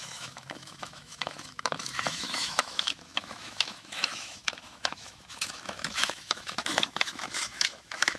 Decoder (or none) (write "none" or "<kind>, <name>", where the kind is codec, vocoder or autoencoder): autoencoder, DAC-VAE